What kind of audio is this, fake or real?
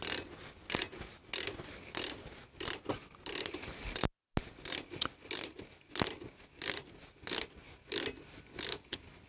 real